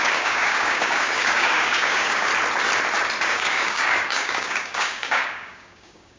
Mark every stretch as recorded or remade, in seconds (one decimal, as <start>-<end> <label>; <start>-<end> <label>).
0.0-2.3 remade; 2.3-3.2 recorded; 3.2-6.2 remade